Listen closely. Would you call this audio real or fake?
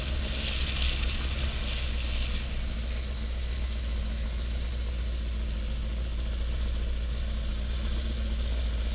real